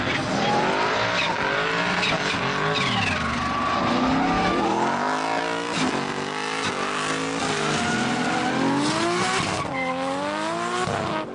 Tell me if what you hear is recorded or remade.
recorded